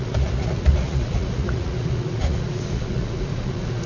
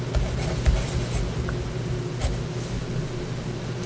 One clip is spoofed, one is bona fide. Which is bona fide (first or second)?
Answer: second